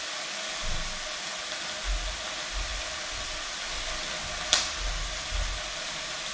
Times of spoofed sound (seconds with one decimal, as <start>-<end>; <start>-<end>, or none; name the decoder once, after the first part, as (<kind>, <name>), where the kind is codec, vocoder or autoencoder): none